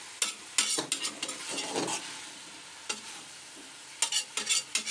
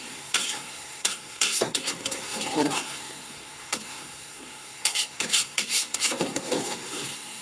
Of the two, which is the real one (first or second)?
first